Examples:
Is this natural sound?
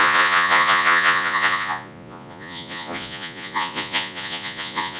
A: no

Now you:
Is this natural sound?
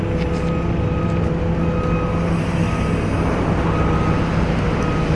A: yes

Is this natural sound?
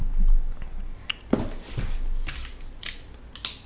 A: yes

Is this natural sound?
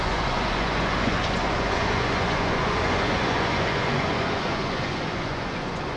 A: no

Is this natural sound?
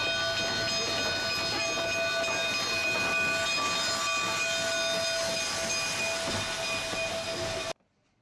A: yes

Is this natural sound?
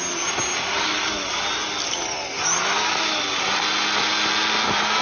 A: yes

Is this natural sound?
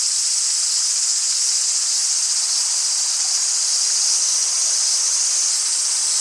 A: yes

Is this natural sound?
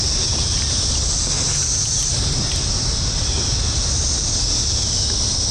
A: yes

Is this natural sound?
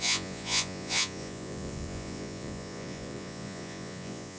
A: no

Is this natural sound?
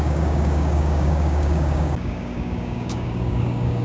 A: no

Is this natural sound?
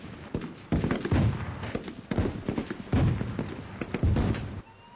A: yes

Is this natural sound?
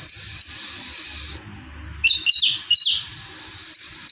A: yes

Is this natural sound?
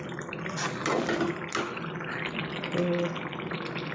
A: yes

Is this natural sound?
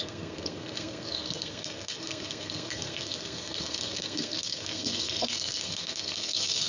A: no